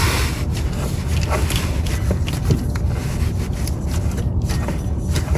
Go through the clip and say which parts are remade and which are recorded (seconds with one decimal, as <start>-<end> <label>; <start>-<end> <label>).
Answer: 0.0-5.4 recorded